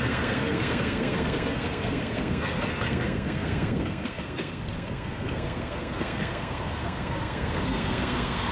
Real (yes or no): no